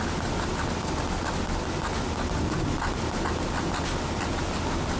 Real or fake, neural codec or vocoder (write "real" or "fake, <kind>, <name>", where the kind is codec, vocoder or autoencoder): real